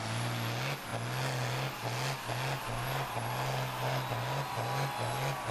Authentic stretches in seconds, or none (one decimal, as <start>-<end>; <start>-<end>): 0.0-5.5